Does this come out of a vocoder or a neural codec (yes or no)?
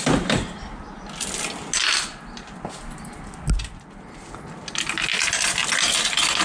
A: no